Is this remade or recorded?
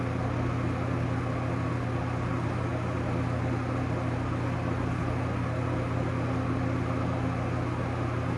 recorded